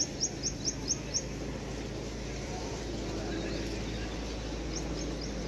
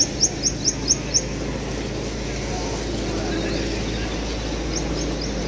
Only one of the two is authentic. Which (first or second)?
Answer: second